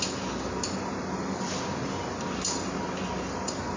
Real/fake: real